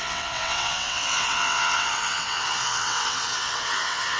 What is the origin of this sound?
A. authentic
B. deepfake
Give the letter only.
B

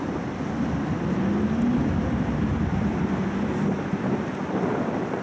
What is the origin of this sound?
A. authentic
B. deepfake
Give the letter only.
A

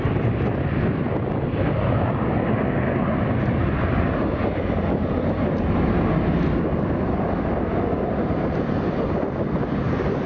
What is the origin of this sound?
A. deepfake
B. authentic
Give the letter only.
B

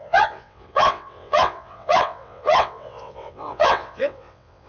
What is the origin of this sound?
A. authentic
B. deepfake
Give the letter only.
B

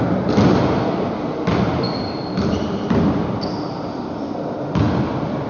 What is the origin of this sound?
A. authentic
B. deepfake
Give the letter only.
A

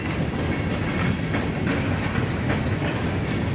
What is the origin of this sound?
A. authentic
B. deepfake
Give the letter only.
A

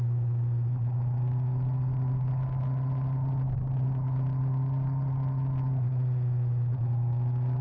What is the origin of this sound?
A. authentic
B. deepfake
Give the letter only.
A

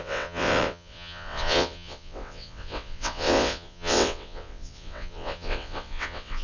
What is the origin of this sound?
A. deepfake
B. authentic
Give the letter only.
A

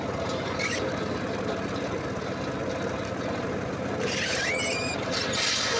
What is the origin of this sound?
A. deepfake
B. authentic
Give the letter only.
B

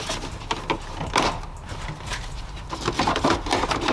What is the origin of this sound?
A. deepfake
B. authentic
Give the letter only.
B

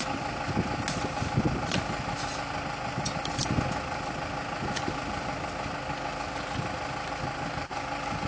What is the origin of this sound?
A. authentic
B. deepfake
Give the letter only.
A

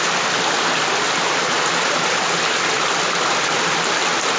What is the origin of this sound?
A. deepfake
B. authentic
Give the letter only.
B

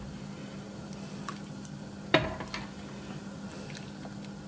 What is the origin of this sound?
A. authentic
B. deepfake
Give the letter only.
A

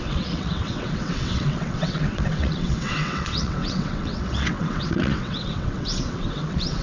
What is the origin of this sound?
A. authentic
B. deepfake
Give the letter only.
B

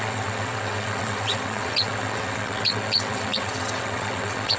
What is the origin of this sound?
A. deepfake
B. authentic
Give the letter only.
A